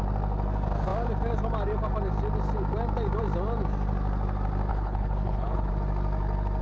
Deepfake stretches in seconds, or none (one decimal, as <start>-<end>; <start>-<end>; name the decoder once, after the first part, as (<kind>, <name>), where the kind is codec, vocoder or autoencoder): 4.7-5.7 (codec, HILCodec)